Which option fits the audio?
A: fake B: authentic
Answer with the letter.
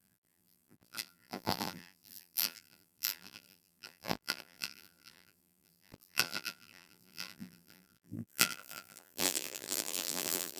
A